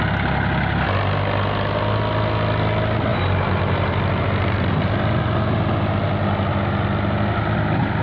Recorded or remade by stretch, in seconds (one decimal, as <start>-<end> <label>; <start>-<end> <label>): 0.0-3.1 recorded; 3.1-5.0 remade; 5.0-8.0 recorded